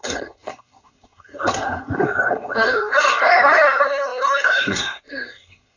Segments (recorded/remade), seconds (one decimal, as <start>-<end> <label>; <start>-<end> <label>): 0.0-5.8 remade